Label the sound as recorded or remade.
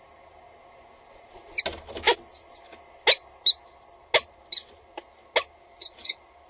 recorded